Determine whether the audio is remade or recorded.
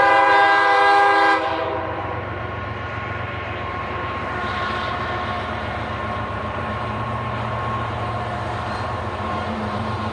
remade